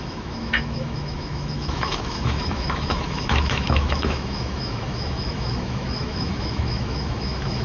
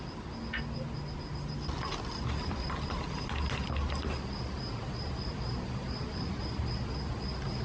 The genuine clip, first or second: second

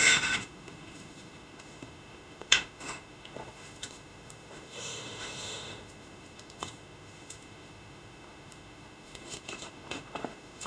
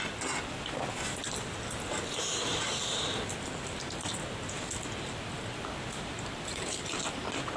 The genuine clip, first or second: second